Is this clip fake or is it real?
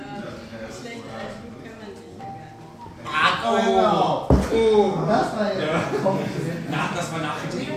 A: real